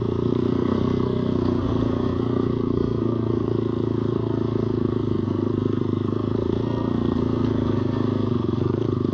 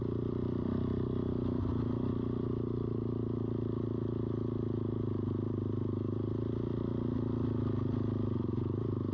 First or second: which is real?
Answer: second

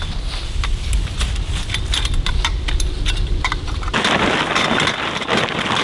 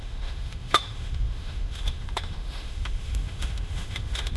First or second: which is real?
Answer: first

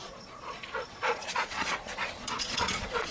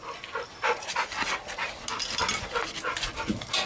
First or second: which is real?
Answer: second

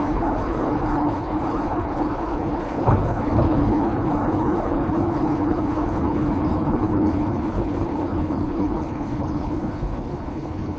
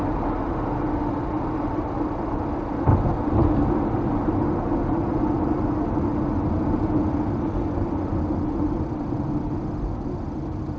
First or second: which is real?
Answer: second